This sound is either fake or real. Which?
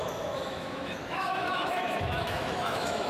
fake